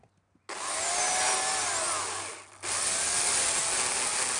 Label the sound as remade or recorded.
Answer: recorded